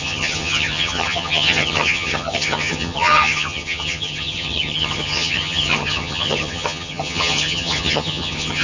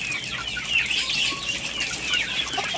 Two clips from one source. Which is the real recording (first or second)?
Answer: second